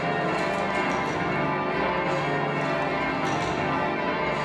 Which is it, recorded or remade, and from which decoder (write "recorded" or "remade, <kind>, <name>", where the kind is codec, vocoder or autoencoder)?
recorded